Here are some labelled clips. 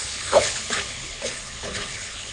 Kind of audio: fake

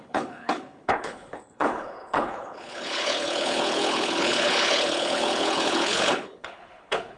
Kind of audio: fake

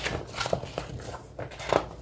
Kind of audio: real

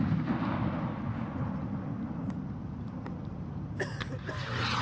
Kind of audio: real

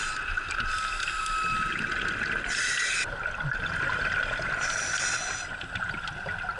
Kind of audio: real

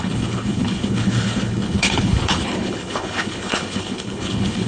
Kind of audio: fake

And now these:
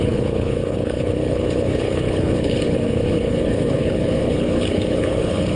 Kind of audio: fake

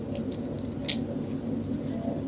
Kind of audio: real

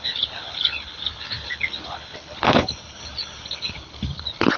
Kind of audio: fake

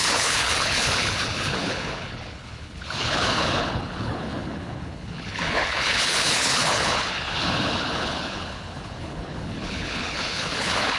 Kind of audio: fake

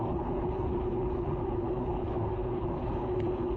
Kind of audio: fake